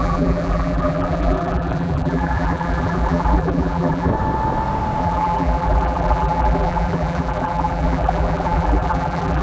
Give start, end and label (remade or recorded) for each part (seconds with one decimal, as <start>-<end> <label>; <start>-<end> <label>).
0.0-4.1 remade; 4.1-5.0 recorded; 5.0-9.4 remade